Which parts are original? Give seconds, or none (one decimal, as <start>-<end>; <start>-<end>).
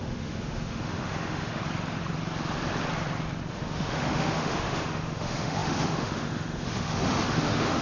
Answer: 1.6-3.5